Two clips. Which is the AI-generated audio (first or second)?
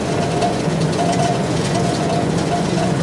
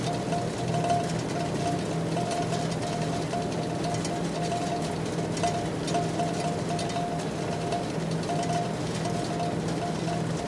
first